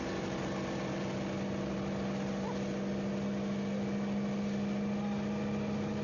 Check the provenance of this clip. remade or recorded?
recorded